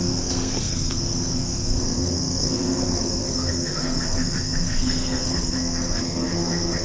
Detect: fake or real fake